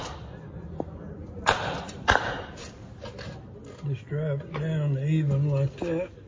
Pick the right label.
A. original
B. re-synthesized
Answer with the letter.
A